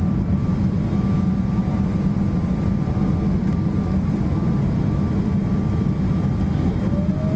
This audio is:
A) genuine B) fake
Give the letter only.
A